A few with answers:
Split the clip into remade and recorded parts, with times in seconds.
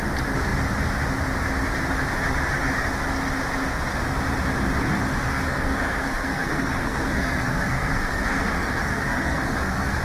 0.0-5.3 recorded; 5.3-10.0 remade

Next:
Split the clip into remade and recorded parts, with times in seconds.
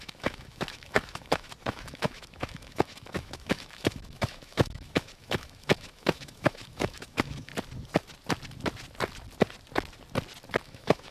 0.0-7.5 remade; 7.5-10.6 recorded; 10.6-11.1 remade